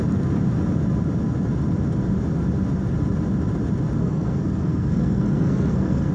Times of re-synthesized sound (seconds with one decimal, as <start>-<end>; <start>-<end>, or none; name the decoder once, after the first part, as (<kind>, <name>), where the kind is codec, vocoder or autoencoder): 4.0-6.1 (codec, SNAC)